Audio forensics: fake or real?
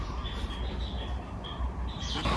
real